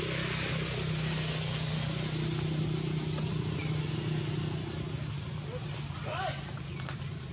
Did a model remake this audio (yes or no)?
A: no